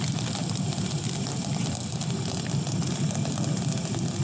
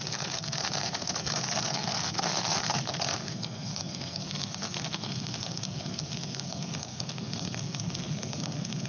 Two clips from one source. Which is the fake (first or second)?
second